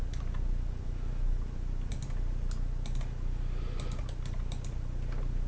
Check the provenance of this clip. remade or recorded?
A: recorded